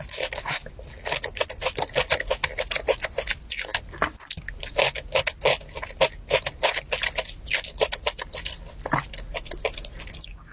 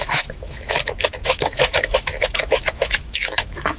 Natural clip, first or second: first